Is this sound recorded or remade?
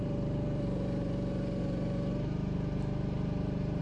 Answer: remade